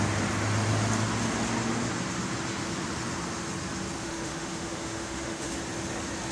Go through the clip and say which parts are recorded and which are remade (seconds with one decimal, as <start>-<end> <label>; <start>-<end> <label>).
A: 0.0-4.0 recorded; 4.0-5.5 remade; 5.5-6.3 recorded